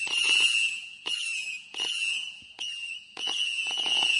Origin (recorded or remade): remade